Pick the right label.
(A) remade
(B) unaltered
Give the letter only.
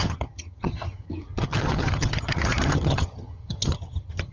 A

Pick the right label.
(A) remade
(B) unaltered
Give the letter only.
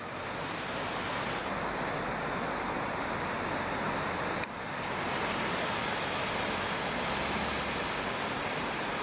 B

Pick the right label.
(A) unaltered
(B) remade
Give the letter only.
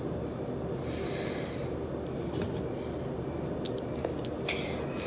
A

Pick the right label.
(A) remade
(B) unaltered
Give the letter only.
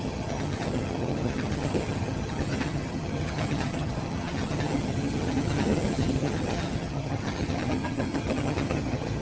A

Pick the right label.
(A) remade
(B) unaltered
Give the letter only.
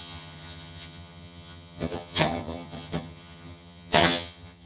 A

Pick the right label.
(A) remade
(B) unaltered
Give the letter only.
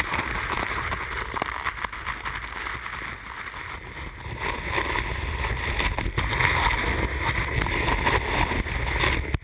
B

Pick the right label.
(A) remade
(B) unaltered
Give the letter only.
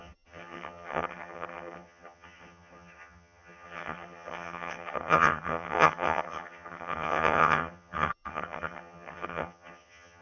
A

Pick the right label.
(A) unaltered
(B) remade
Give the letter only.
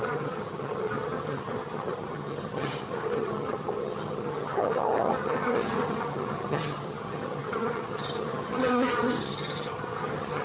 B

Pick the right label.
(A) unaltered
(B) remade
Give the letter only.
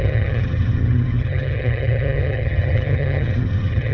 B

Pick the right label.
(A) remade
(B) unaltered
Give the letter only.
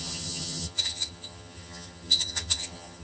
A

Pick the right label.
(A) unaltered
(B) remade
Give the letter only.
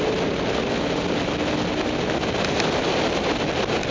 A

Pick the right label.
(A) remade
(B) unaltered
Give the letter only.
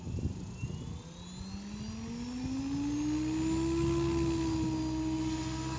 B